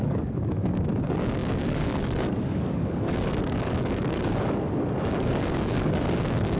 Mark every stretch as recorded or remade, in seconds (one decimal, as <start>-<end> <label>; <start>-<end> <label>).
0.0-6.6 remade